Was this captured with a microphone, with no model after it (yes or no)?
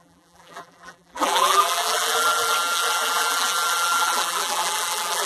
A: no